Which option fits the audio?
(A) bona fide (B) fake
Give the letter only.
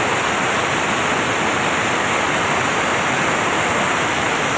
A